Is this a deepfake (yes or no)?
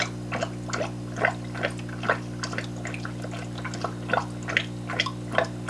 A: no